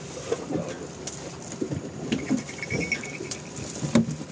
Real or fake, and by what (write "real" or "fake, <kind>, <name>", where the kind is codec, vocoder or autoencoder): real